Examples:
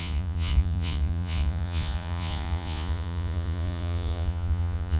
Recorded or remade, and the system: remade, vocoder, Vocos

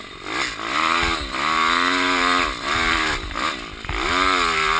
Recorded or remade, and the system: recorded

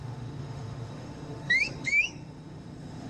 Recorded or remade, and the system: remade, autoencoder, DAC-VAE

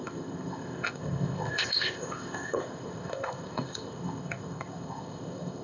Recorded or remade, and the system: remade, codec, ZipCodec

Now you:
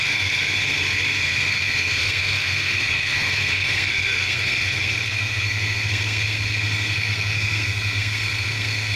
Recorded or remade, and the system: remade, codec, SNAC